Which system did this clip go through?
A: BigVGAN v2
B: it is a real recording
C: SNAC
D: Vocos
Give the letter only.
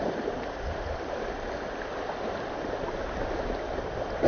A